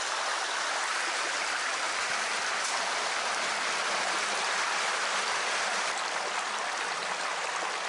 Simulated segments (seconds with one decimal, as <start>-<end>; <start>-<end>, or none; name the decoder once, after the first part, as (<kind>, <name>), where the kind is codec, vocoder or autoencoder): none